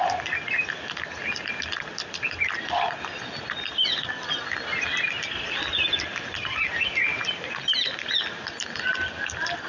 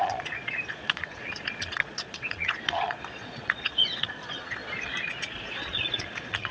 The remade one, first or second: second